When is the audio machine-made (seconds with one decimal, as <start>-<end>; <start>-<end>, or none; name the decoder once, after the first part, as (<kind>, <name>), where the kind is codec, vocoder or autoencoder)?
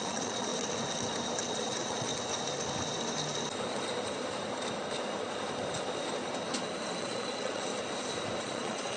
0.0-0.5 (vocoder, Vocos); 1.5-2.1; 7.0-7.7; 8.4-9.0